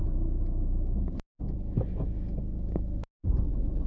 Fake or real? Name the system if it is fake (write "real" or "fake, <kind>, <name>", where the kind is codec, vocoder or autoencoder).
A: real